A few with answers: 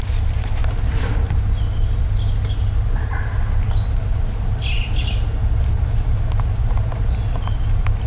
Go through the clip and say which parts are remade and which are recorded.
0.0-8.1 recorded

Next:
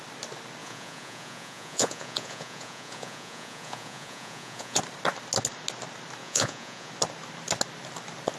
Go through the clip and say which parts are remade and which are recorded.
0.0-0.6 recorded; 0.6-4.8 remade; 4.8-6.2 recorded; 6.2-6.9 remade; 6.9-8.4 recorded

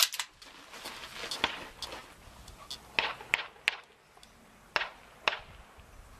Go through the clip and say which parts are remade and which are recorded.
0.0-6.2 recorded